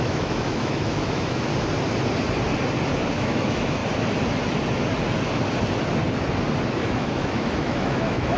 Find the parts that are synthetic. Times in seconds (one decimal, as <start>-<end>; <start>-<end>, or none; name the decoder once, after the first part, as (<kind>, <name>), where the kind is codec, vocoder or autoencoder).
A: 0.0-1.5 (autoencoder, DAC-VAE); 3.1-3.8; 6.7-8.4